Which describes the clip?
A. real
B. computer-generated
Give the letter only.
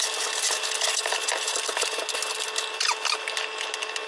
A